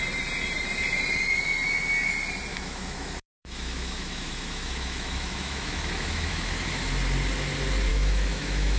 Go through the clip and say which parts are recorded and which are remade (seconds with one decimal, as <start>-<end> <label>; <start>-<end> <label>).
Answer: 0.0-2.5 recorded; 2.5-6.9 remade; 6.9-7.9 recorded; 7.9-8.8 remade